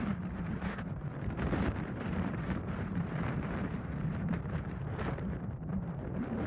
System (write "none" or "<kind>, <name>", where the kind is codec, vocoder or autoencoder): vocoder, BigVGAN v2